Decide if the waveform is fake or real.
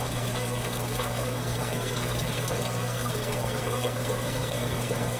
fake